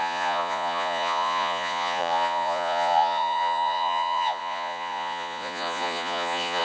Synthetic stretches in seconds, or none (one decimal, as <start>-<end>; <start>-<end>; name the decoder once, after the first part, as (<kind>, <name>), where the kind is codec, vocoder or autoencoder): 0.0-6.6 (vocoder, Vocos)